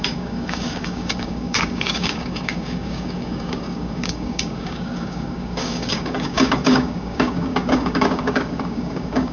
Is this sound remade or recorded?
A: remade